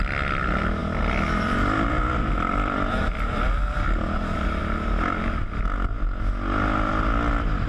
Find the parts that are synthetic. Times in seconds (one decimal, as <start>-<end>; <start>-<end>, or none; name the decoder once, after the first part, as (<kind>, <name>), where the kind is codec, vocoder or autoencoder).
0.0-4.6 (vocoder, BigVGAN v2); 6.9-7.7